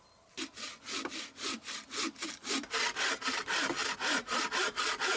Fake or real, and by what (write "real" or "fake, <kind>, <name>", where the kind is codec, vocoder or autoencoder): real